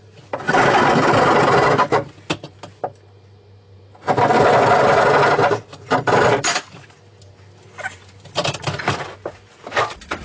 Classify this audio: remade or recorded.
recorded